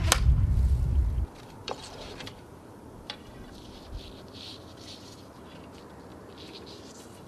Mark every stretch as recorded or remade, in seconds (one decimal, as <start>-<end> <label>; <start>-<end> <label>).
0.0-1.0 recorded; 1.0-5.4 remade; 5.4-7.3 recorded